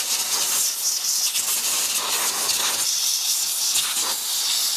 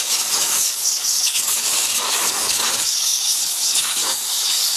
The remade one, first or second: second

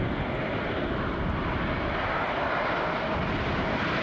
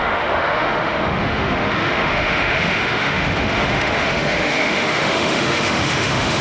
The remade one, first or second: second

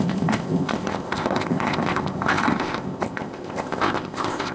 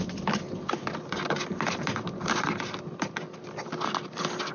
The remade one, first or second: first